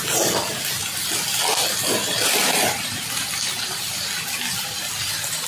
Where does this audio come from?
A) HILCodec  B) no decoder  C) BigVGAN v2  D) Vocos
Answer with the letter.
B